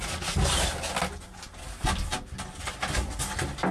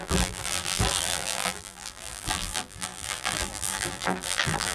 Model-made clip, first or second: second